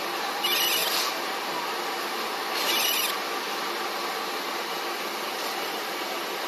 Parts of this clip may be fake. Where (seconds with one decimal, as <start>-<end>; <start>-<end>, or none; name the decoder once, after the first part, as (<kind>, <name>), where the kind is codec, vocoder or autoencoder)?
none